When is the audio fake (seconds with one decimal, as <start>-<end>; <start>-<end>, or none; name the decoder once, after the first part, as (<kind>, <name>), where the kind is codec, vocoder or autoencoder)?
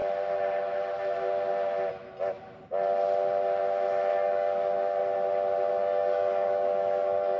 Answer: 4.1-5.0 (codec, DAC); 5.7-7.4